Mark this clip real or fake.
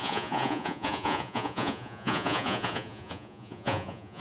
fake